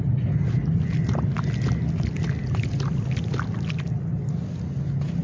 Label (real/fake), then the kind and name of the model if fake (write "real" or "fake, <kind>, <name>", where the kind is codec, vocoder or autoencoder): real